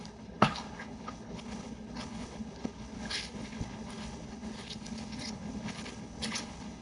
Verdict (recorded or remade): remade